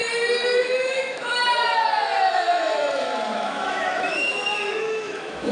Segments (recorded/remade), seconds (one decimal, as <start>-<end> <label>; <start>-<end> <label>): 0.0-0.6 recorded; 0.6-1.4 remade; 1.4-2.3 recorded; 2.3-5.5 remade